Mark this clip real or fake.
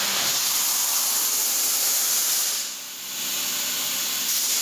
real